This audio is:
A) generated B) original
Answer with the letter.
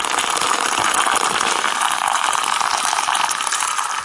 A